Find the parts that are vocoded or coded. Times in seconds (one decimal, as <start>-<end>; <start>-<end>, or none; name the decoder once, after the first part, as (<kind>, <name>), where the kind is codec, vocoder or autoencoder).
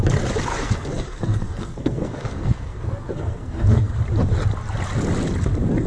0.5-4.0 (codec, SNAC)